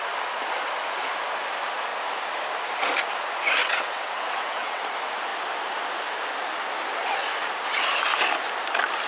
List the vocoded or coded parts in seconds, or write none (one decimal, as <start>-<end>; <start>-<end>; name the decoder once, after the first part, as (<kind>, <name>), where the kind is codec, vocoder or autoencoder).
3.6-4.8 (vocoder, WaveNeXt)